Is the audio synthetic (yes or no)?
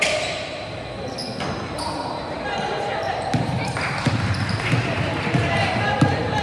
yes